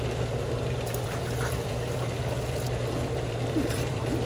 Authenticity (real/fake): fake